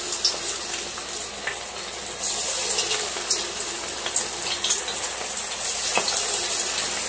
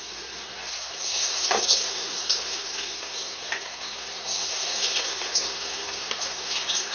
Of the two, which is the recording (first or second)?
first